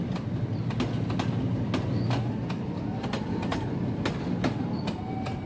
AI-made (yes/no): no